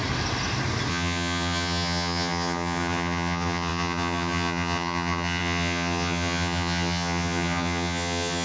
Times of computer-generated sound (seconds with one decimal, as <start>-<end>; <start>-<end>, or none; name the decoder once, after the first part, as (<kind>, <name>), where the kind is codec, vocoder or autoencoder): 0.9-8.4 (vocoder, HiFi-GAN)